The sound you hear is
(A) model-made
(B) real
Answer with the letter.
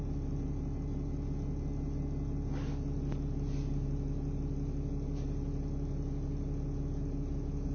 B